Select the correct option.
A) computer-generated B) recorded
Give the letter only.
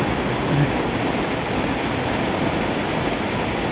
B